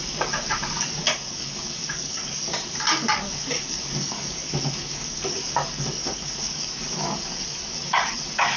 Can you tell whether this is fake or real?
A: fake